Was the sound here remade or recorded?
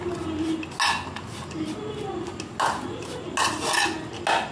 recorded